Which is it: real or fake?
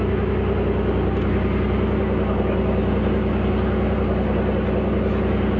real